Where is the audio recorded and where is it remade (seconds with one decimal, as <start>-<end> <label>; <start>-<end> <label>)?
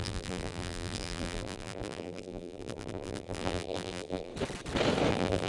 0.0-4.3 remade; 4.3-5.1 recorded; 5.1-5.5 remade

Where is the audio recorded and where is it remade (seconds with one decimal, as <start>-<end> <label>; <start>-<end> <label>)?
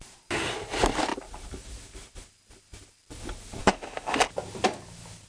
0.0-3.6 recorded; 3.6-4.2 remade; 4.2-5.3 recorded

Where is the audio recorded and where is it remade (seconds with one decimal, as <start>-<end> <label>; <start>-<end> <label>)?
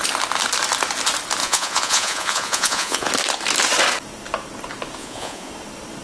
0.0-1.4 recorded; 1.4-3.1 remade; 3.1-5.0 recorded; 5.0-5.5 remade; 5.5-6.0 recorded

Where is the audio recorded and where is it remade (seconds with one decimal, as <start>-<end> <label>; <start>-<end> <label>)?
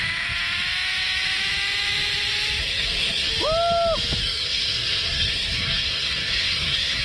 0.0-2.6 recorded; 2.6-3.3 remade; 3.3-4.2 recorded; 4.2-7.0 remade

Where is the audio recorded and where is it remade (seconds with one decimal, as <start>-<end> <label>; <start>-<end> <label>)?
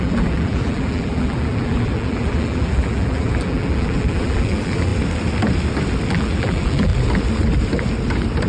0.0-4.9 remade; 4.9-6.1 recorded; 6.1-6.9 remade; 6.9-8.5 recorded